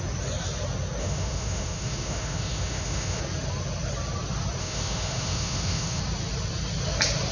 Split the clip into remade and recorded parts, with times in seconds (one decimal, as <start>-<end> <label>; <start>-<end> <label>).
0.0-1.0 recorded; 1.0-3.2 remade; 3.2-4.6 recorded; 4.6-6.0 remade; 6.0-7.3 recorded